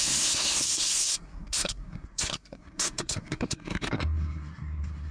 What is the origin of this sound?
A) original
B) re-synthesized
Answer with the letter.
B